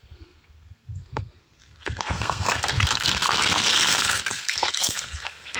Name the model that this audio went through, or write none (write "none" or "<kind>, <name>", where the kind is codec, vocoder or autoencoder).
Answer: codec, SNAC